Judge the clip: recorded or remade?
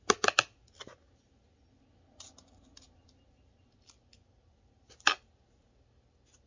recorded